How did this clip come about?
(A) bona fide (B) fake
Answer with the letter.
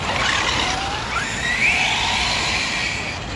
A